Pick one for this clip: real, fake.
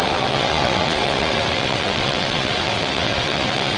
fake